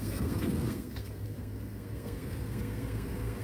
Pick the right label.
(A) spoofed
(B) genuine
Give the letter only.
A